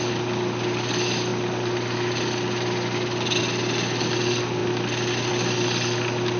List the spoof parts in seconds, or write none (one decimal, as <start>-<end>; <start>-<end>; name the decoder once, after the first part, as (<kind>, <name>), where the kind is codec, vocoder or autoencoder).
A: none